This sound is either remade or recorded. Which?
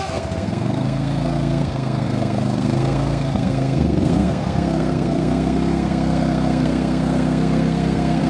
remade